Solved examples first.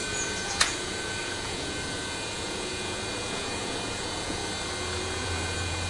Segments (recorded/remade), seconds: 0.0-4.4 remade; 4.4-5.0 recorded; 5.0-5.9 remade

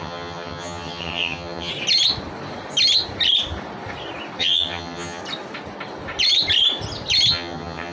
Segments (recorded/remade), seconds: 0.0-1.7 remade; 1.7-4.4 recorded; 4.4-5.2 remade; 5.2-7.3 recorded; 7.3-7.9 remade

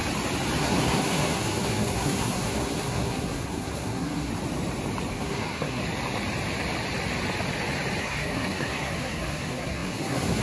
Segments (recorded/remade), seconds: 0.0-0.6 recorded; 0.6-4.3 remade; 4.3-5.1 recorded; 5.1-5.8 remade; 5.8-8.0 recorded; 8.0-10.4 remade

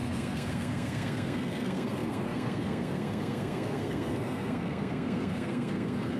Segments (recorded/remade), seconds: 0.0-6.2 remade

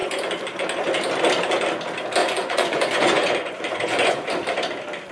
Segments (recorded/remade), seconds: 0.0-2.2 recorded; 2.2-4.3 remade; 4.3-5.1 recorded

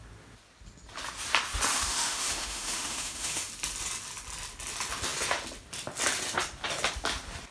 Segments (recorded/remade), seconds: 0.0-1.7 recorded; 1.7-3.5 remade; 3.5-7.5 recorded

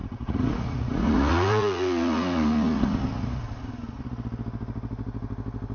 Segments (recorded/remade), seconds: 0.0-3.4 remade; 3.4-5.7 recorded